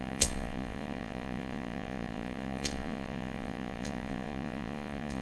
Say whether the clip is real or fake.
fake